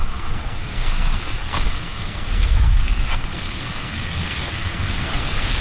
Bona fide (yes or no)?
no